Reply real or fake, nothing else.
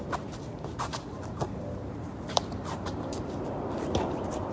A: fake